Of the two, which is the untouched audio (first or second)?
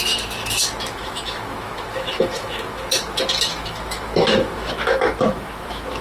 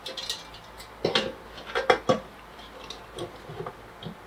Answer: second